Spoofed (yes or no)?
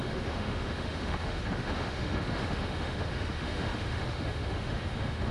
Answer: yes